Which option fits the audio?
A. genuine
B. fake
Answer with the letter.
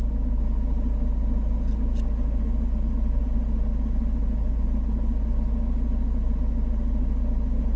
A